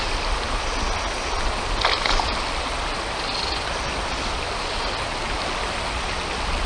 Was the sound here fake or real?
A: real